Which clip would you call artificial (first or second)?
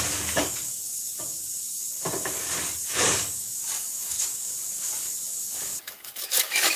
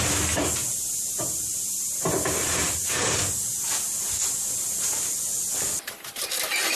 first